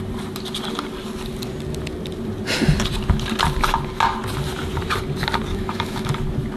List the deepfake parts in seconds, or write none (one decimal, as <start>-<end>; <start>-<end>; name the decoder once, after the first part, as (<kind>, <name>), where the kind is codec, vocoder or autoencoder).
5.5-6.1 (autoencoder, DAC-VAE)